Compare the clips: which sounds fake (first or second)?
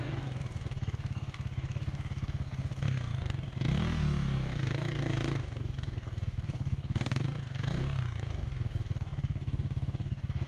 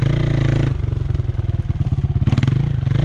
first